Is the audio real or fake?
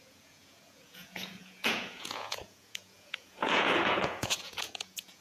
fake